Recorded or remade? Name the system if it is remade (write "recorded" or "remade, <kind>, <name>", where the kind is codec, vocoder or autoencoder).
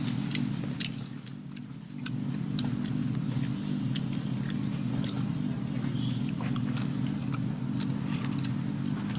recorded